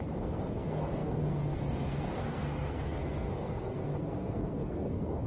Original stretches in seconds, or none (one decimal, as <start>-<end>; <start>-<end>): none